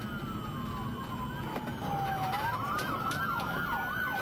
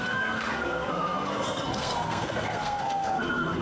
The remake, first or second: second